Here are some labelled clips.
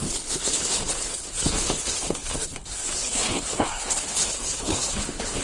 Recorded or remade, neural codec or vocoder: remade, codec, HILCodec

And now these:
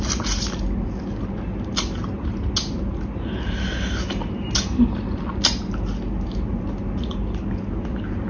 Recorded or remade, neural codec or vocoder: recorded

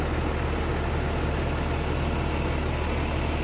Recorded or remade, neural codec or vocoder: recorded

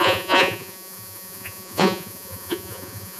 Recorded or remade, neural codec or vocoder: remade, vocoder, Vocos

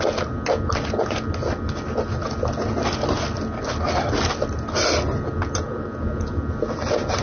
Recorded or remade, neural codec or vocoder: recorded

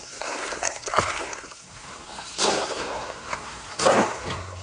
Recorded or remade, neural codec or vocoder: remade, codec, SNAC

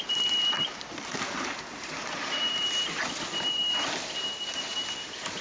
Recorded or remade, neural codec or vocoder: remade, vocoder, BigVGAN v2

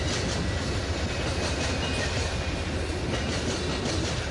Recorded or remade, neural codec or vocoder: recorded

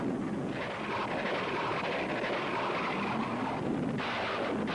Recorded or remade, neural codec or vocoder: recorded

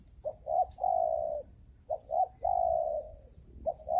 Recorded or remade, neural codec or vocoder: recorded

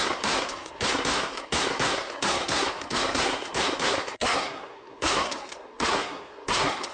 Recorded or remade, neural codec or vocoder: remade, codec, SNAC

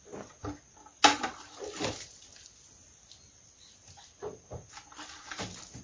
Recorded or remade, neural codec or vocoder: recorded